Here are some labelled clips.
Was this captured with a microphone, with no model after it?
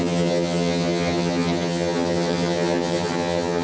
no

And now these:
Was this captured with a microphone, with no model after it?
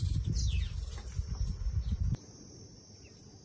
yes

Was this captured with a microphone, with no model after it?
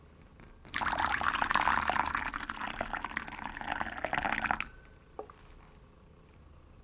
yes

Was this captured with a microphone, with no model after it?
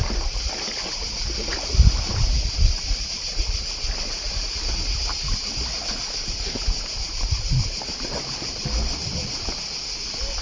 yes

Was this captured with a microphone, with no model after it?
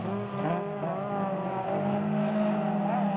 yes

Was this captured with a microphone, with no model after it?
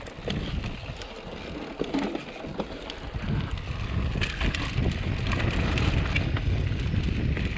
yes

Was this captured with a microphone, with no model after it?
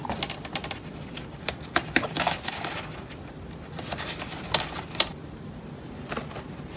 yes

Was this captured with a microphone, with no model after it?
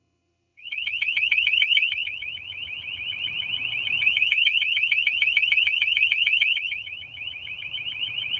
no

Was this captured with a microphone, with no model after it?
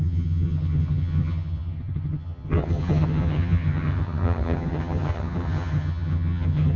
no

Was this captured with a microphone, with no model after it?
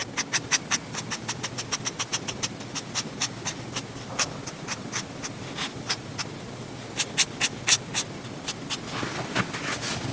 yes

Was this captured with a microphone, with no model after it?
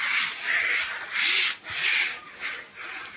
yes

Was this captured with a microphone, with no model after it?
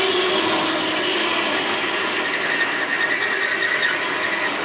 yes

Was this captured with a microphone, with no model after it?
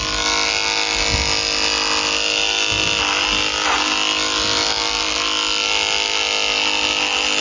yes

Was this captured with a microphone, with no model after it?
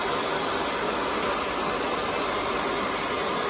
yes